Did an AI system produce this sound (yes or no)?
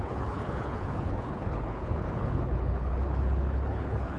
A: yes